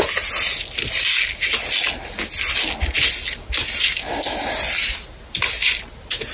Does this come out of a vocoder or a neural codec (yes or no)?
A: no